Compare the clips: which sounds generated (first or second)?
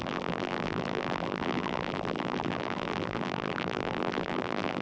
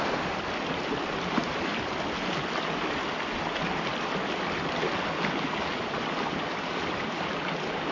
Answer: first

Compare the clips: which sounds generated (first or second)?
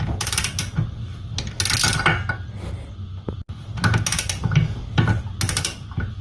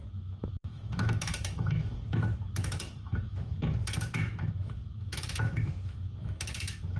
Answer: second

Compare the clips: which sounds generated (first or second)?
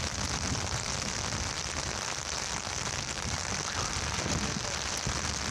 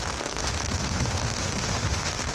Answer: second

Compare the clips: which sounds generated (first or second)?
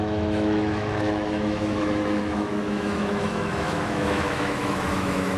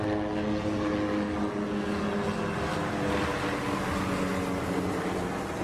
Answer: first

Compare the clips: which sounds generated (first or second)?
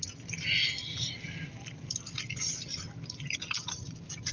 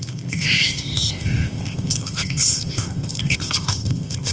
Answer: second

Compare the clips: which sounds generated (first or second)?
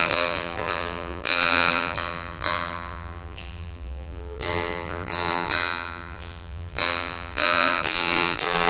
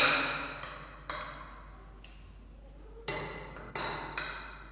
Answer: first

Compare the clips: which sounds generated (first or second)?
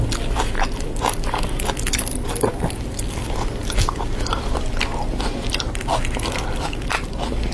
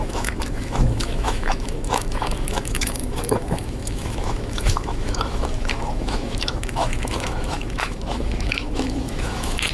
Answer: second